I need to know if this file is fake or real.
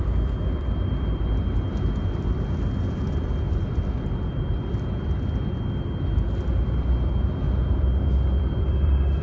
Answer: fake